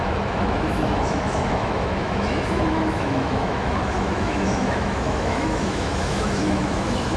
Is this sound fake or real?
fake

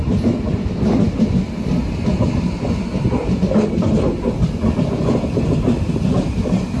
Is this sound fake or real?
real